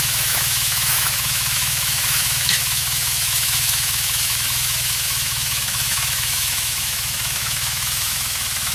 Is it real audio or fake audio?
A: fake